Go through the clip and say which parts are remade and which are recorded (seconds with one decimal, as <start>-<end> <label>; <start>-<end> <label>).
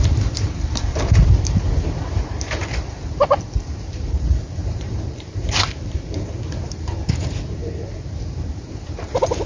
0.0-2.6 remade; 2.6-3.1 recorded; 3.1-9.5 remade